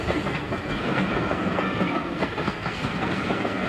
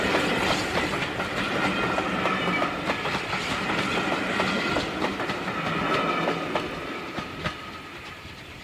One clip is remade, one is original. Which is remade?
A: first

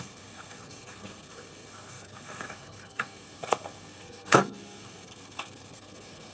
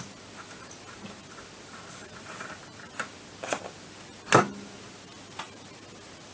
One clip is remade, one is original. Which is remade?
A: first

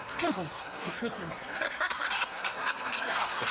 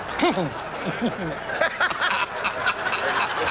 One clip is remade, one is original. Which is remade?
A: first